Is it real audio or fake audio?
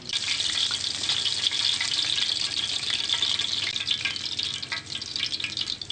real